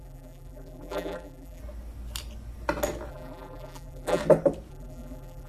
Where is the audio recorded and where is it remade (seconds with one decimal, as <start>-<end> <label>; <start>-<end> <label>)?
0.0-1.6 remade; 1.6-3.1 recorded; 3.1-4.2 remade; 4.2-4.7 recorded; 4.7-5.5 remade